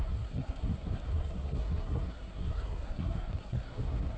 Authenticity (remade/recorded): remade